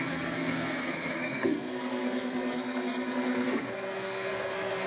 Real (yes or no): no